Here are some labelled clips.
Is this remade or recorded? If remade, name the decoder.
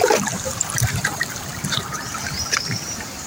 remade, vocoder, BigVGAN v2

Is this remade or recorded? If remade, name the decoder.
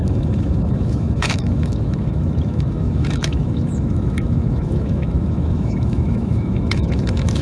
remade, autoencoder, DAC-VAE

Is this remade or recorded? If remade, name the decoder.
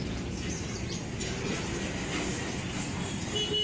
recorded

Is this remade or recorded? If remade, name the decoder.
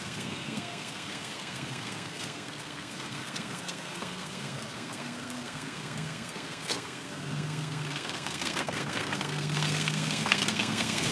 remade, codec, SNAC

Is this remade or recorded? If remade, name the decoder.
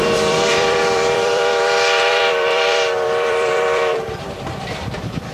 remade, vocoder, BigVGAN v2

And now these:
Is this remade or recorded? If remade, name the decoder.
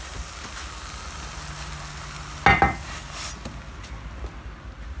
recorded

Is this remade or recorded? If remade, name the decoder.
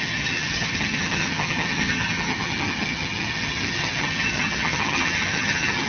remade, vocoder, HiFi-GAN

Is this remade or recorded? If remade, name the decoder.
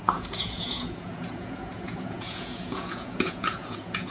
remade, vocoder, Vocos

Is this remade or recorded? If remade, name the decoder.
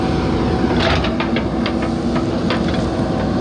recorded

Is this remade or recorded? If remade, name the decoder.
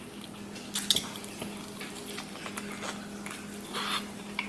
recorded